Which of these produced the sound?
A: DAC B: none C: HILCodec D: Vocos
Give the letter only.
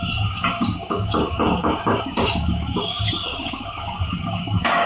A